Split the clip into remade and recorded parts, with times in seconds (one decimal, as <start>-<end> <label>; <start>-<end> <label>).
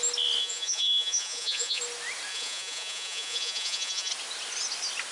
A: 0.0-0.4 recorded; 0.4-1.8 remade; 1.8-2.3 recorded; 2.3-4.1 remade; 4.1-5.1 recorded